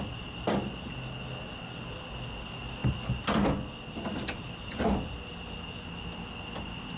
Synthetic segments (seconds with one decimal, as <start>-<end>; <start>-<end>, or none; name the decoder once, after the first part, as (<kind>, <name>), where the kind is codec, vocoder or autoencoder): none